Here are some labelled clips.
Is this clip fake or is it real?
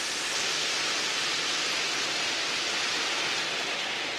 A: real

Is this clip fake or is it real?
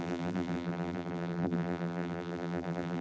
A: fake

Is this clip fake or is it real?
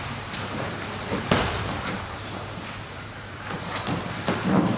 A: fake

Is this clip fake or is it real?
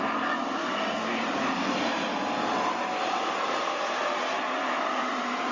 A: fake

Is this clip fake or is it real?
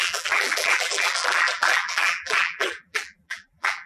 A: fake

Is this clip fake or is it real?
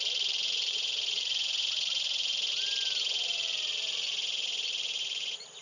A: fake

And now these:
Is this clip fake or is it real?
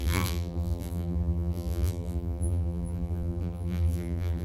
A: fake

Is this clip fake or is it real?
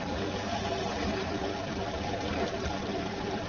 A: fake